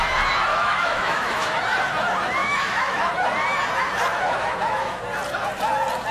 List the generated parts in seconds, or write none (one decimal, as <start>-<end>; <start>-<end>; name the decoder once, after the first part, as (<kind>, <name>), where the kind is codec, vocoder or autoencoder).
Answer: 0.5-1.6 (autoencoder, DAC-VAE); 2.4-3.1; 4.1-5.0